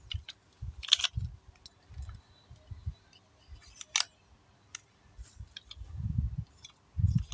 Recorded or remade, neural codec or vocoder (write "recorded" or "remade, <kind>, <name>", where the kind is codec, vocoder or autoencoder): recorded